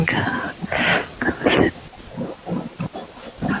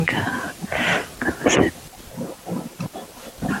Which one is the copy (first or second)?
second